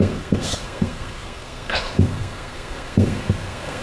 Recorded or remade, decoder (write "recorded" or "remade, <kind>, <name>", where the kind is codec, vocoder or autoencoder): remade, codec, SNAC